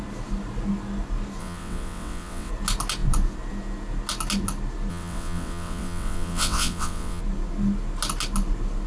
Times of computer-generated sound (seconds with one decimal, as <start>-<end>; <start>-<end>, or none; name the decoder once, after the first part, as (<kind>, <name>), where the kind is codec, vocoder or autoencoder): 1.4-2.5 (vocoder, WaveNeXt); 4.9-7.2